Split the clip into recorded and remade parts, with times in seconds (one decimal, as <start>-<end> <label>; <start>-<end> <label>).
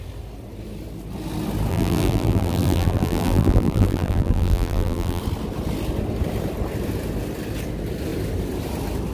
0.0-1.7 recorded; 1.7-5.2 remade; 5.2-9.1 recorded